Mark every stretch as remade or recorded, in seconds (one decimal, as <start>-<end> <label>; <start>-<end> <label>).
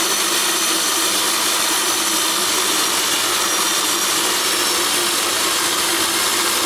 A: 0.0-6.7 recorded